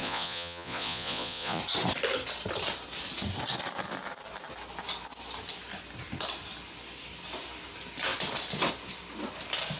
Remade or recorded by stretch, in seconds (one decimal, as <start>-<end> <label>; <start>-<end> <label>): 0.0-1.6 remade; 1.6-9.8 recorded